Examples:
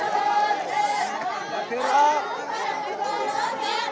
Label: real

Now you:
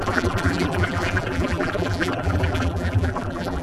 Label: fake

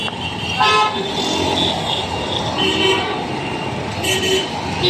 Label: real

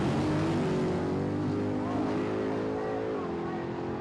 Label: real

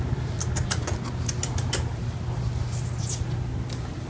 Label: real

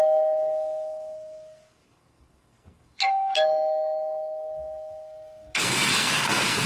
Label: fake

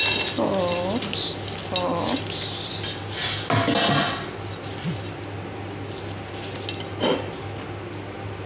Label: real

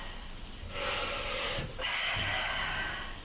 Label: real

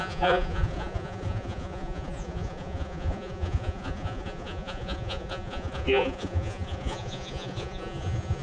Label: fake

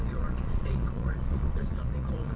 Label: fake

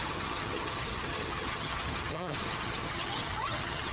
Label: fake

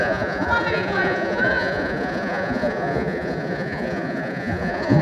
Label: fake